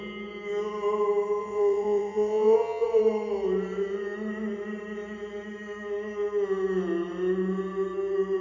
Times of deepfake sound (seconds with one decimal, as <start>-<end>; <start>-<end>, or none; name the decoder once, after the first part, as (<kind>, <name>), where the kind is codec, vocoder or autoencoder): 1.4-3.0 (vocoder, WaveNeXt)